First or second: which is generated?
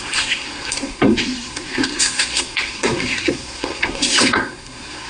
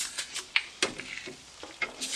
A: first